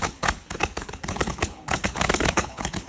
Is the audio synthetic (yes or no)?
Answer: yes